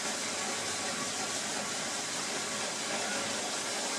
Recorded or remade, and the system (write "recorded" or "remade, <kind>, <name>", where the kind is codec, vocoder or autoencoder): recorded